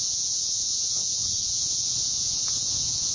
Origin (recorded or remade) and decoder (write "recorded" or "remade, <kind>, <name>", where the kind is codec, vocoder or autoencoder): remade, vocoder, Vocos